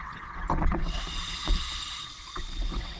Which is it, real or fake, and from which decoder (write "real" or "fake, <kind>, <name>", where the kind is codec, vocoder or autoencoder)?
fake, vocoder, WaveNeXt